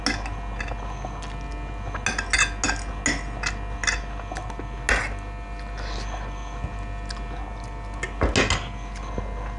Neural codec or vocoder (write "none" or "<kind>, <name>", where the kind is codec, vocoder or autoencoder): none